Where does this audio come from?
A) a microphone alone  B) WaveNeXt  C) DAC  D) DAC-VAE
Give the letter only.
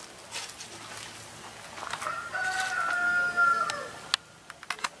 A